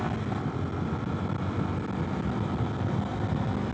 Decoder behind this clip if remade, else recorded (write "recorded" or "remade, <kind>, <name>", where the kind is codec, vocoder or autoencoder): recorded